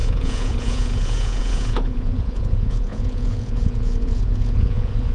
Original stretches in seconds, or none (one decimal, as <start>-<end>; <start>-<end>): none